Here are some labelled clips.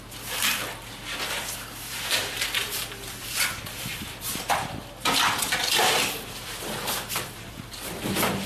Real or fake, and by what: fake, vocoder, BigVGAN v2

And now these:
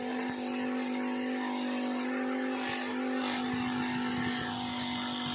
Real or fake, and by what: real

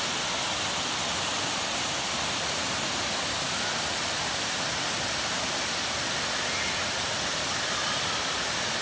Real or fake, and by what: real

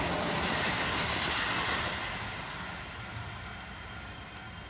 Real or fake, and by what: real